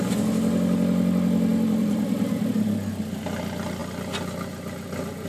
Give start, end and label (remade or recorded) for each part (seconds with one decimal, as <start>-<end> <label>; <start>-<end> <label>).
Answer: 0.0-1.5 recorded; 1.5-2.4 remade; 2.4-5.3 recorded

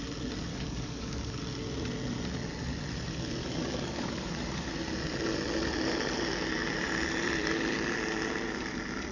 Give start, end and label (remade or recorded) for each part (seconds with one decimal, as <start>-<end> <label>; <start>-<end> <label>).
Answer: 0.0-0.5 recorded; 0.5-1.4 remade; 1.4-3.4 recorded; 3.4-4.7 remade; 4.7-9.1 recorded

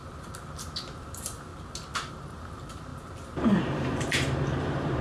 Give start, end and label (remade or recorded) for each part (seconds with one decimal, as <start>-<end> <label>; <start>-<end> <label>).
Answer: 0.0-1.0 recorded; 1.0-1.5 remade; 1.5-2.1 recorded; 2.1-2.9 remade; 2.9-3.6 recorded; 3.6-5.0 remade

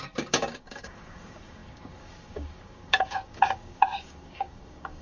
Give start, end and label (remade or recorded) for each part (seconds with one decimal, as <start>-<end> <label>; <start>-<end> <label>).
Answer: 0.0-5.0 remade